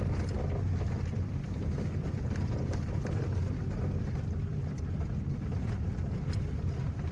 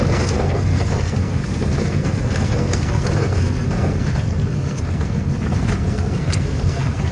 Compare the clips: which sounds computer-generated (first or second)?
second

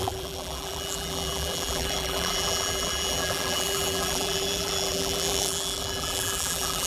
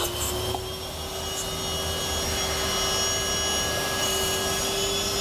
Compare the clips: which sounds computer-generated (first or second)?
first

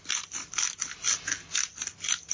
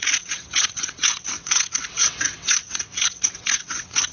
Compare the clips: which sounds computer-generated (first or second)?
second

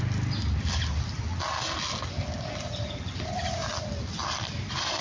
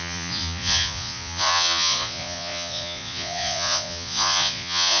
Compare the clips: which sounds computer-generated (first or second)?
second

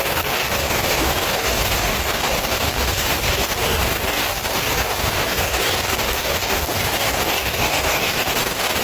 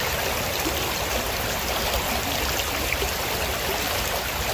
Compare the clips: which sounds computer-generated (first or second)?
first